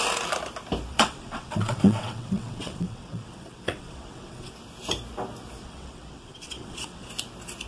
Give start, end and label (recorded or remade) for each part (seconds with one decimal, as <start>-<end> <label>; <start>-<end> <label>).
0.0-0.9 recorded; 0.9-4.5 remade; 4.5-5.6 recorded; 5.6-7.1 remade; 7.1-7.7 recorded